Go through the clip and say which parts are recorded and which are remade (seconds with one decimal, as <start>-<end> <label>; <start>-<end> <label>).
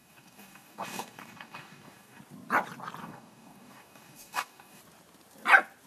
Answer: 0.0-2.2 remade; 2.2-3.0 recorded; 3.0-4.8 remade; 4.8-5.9 recorded